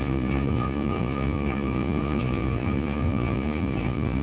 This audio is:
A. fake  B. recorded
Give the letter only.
A